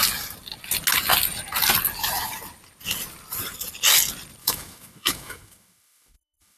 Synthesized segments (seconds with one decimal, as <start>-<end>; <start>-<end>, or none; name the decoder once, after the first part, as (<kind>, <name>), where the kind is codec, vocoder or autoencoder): 4.4-6.6 (autoencoder, DAC-VAE)